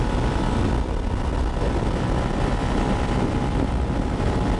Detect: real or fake real